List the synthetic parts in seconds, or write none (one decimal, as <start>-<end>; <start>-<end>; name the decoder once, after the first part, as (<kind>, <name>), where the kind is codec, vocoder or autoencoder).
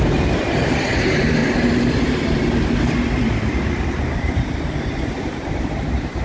0.0-1.4 (vocoder, BigVGAN v2); 5.1-6.2